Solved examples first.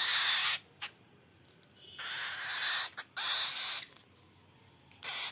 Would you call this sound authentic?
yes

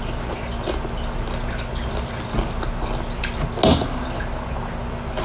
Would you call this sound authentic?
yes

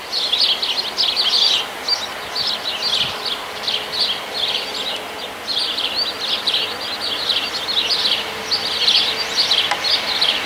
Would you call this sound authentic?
yes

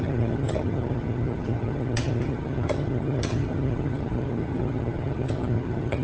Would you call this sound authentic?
no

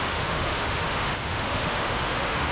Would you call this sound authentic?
no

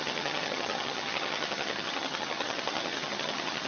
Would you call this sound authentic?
no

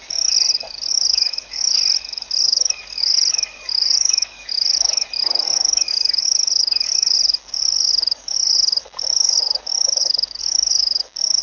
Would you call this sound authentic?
no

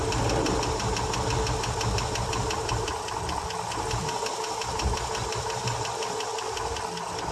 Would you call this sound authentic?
yes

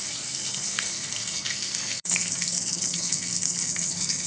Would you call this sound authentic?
no